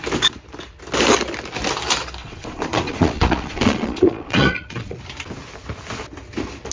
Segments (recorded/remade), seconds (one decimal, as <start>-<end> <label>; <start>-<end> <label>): 0.0-2.2 recorded; 2.2-5.0 remade; 5.0-6.7 recorded